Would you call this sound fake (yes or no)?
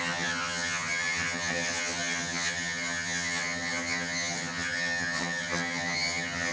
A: yes